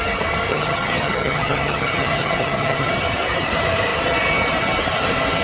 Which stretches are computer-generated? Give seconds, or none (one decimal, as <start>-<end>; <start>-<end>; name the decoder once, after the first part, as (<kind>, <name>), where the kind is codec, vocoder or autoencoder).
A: 0.5-2.9 (vocoder, HiFi-GAN)